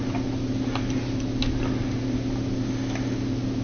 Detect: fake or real real